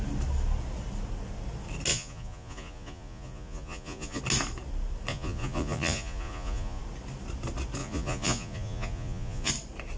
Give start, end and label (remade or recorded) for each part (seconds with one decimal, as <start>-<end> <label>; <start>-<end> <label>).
0.0-1.9 recorded; 1.9-4.2 remade; 4.2-5.1 recorded; 5.1-6.8 remade; 6.8-7.8 recorded; 7.8-9.5 remade; 9.5-10.0 recorded